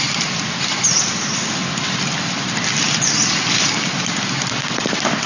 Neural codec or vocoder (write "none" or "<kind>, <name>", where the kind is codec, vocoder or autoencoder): none